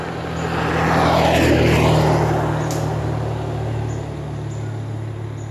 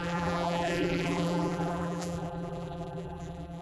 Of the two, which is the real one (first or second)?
first